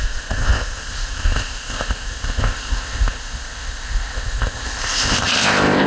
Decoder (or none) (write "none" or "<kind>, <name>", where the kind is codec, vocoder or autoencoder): codec, ZipCodec